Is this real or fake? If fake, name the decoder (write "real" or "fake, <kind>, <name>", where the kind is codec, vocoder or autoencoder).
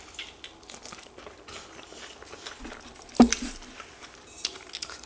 real